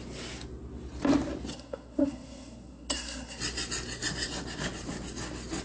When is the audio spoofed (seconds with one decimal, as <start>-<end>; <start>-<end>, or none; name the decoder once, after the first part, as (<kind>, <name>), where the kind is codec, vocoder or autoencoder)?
1.5-3.4 (codec, SNAC)

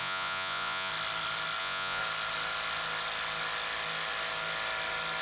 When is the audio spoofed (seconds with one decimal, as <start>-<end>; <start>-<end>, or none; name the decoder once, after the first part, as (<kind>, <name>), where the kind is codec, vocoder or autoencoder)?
0.0-0.9 (vocoder, Vocos); 1.6-2.0

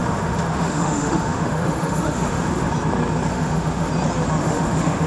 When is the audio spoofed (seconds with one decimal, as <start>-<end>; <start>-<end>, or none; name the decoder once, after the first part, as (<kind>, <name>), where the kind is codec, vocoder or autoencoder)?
0.0-2.7 (autoencoder, DAC-VAE); 3.3-3.9; 4.4-5.1

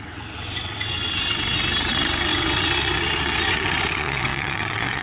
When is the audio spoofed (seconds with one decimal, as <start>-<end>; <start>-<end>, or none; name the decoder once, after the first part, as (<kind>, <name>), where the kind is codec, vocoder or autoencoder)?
0.0-5.0 (vocoder, WaveNeXt)

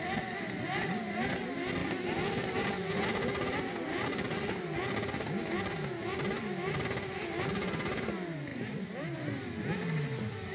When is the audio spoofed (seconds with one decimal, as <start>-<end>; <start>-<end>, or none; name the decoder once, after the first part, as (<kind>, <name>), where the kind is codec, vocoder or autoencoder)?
8.5-9.1 (vocoder, BigVGAN v2)